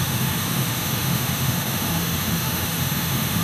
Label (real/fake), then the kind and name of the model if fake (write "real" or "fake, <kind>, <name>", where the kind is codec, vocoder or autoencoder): fake, autoencoder, DAC-VAE